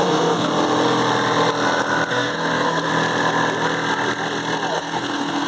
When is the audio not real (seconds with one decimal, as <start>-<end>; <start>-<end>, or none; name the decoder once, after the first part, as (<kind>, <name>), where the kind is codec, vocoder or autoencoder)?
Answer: 0.0-0.5 (codec, SNAC); 2.1-2.9; 4.7-5.5